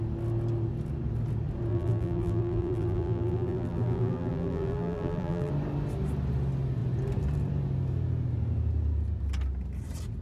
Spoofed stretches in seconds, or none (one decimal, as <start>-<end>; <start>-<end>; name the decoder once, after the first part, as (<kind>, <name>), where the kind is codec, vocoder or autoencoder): 1.7-5.5 (vocoder, BigVGAN v2)